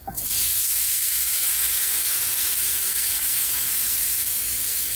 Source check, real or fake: fake